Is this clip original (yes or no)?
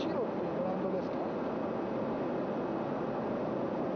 yes